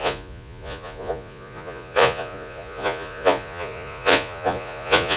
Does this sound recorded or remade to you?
remade